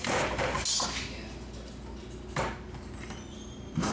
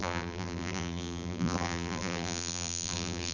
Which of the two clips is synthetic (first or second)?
second